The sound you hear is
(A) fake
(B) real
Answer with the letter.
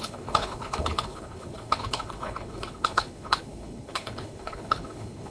A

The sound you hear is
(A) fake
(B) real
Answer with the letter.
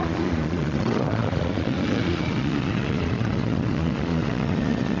A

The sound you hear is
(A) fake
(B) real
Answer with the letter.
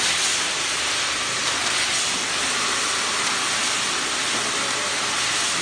B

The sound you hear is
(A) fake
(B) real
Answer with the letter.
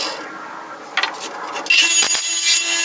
B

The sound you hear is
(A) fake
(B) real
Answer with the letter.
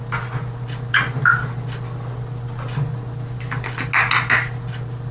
B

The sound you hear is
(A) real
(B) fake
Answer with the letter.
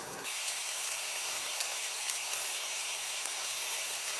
B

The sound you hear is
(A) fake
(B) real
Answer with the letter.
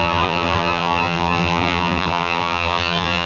A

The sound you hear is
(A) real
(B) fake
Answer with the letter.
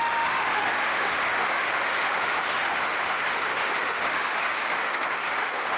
B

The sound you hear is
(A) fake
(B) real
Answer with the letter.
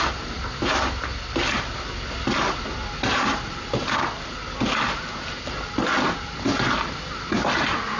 B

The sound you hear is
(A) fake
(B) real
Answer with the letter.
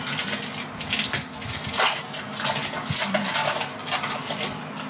B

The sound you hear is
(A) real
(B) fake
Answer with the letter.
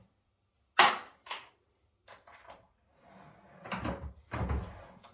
A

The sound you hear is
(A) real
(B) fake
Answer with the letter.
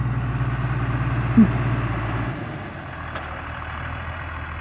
A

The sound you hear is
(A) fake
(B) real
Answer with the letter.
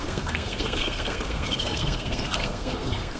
A